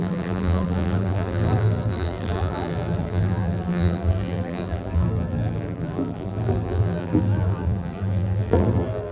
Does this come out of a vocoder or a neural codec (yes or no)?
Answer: yes